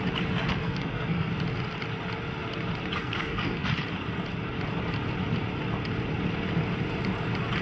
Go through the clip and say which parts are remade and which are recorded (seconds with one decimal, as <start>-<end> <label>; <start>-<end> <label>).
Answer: 0.0-0.6 recorded; 0.6-1.3 remade; 1.3-3.0 recorded; 3.0-3.7 remade; 3.7-7.6 recorded